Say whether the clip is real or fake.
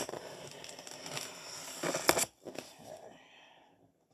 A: real